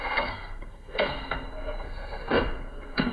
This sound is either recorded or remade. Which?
remade